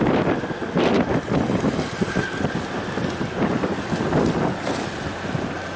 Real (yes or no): yes